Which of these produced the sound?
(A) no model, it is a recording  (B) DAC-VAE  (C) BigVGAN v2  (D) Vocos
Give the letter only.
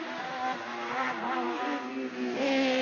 A